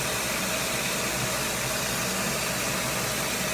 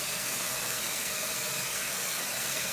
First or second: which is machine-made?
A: second